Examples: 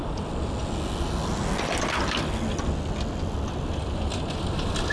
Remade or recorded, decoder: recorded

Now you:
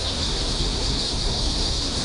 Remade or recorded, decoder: remade, codec, SNAC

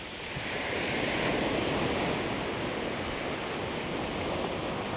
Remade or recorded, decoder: recorded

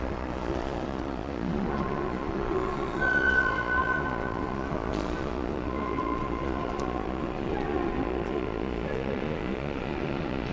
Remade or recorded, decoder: remade, vocoder, Vocos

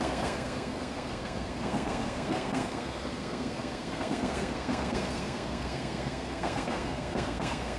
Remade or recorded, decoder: remade, codec, SNAC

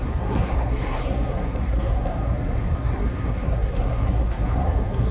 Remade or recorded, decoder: remade, codec, SNAC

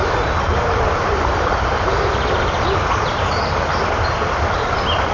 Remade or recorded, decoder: recorded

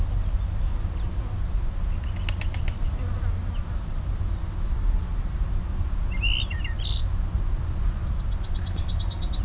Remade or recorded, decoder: recorded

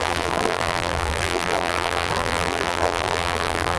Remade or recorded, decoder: remade, vocoder, BigVGAN v2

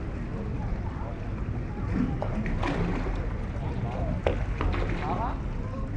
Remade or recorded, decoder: recorded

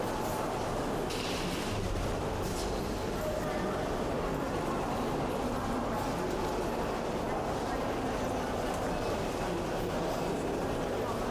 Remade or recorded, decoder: recorded